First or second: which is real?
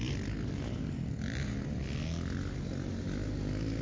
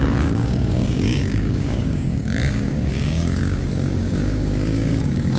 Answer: first